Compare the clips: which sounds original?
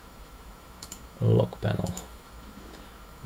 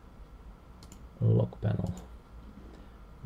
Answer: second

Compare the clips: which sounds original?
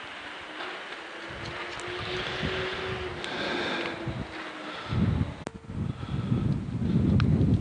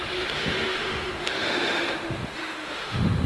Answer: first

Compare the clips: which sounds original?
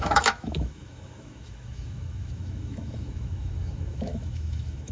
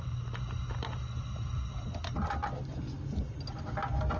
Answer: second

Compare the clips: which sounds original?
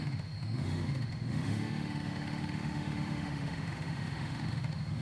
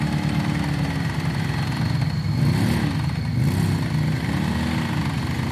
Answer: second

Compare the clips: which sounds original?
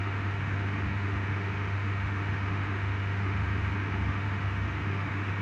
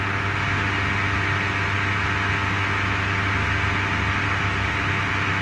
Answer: second